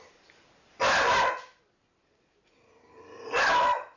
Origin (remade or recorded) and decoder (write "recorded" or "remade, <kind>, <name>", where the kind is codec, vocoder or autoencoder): recorded